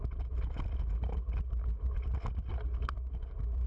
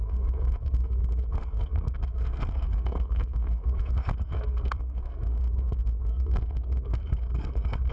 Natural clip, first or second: first